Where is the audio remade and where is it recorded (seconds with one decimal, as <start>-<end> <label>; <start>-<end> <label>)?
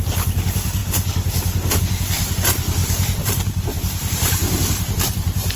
0.0-5.6 remade